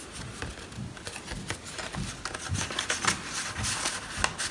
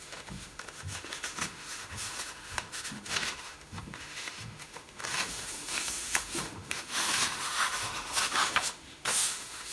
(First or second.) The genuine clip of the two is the first